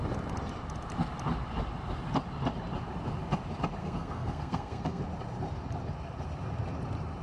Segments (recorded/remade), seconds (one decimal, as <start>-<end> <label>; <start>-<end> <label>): 0.0-3.8 recorded; 3.8-5.0 remade; 5.0-7.2 recorded